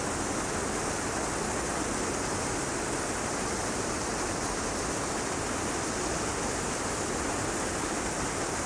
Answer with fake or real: real